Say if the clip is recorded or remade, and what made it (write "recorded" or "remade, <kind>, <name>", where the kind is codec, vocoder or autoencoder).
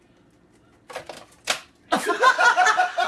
recorded